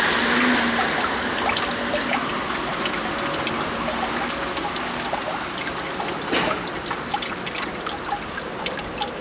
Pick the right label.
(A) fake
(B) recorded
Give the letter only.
B